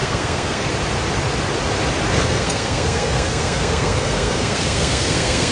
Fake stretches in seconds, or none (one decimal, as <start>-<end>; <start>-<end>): 0.0-0.7; 2.1-5.5